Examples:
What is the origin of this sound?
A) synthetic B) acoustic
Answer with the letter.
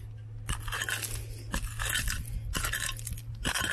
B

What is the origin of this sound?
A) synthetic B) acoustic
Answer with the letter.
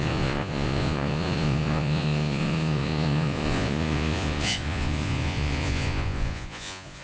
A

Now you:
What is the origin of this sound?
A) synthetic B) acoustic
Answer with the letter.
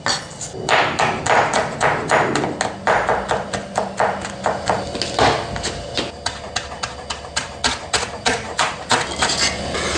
B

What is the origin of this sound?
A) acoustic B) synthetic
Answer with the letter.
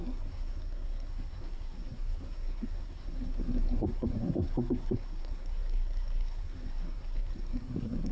B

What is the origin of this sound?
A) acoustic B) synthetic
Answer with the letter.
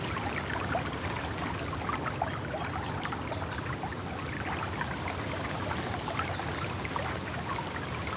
A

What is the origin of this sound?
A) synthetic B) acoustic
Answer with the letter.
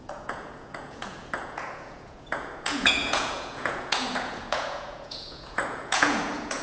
A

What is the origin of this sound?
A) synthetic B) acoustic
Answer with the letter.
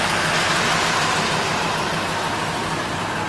A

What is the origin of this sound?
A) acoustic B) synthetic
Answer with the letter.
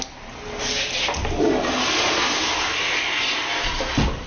A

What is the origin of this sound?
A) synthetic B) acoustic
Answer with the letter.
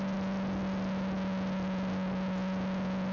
B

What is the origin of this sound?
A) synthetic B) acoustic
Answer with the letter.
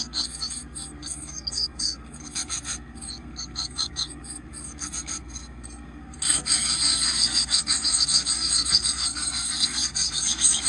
A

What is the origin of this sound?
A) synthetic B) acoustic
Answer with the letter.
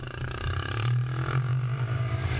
A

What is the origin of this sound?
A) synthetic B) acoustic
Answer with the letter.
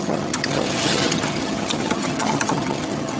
A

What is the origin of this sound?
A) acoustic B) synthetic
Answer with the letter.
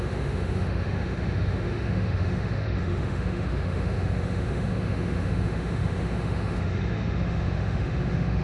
B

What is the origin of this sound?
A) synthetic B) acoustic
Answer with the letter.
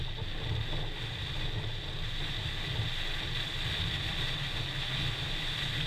B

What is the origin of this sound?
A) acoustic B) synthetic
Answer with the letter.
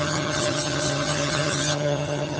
B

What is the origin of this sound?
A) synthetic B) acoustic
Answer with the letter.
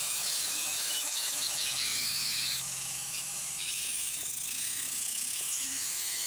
A